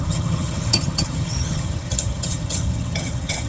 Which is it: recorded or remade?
remade